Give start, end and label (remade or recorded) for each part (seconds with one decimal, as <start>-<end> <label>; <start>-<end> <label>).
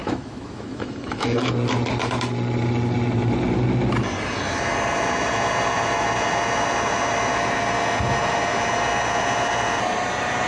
0.0-1.5 remade; 1.5-10.5 recorded